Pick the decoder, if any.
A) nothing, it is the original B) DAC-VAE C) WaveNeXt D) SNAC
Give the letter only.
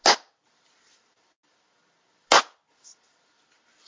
A